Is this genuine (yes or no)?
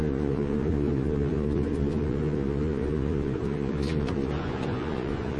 no